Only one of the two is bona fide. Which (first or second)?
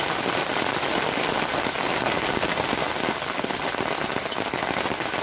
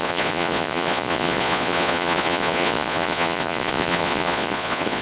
first